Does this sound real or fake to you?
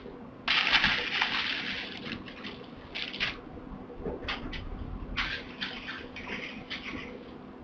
real